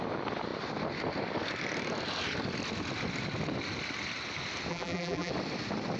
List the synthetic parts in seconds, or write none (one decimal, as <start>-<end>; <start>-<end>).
4.7-5.3